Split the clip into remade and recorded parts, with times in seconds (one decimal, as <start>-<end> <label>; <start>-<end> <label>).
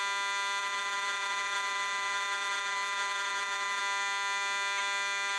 0.0-0.6 recorded; 0.6-3.8 remade; 3.8-5.4 recorded